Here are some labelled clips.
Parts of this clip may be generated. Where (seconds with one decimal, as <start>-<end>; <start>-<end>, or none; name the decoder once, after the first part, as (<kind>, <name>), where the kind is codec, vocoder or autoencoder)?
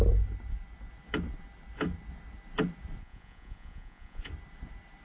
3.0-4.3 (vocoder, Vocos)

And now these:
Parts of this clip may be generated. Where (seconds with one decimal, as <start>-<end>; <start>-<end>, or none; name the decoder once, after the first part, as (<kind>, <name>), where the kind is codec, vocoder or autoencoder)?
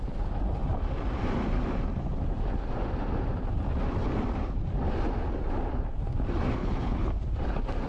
6.6-7.1 (codec, HILCodec)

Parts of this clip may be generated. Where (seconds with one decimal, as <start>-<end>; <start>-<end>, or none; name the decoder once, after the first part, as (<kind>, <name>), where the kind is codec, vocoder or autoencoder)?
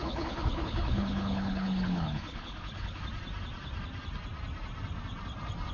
0.0-3.0 (codec, HILCodec)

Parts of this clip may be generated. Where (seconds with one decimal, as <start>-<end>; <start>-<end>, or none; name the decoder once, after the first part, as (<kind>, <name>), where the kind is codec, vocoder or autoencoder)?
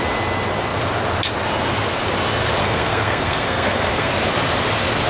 2.6-4.1 (codec, SNAC)